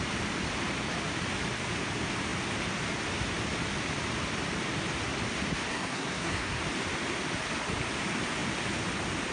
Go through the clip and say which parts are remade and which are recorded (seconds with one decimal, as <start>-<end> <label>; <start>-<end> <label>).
0.0-5.7 recorded; 5.7-6.6 remade; 6.6-9.3 recorded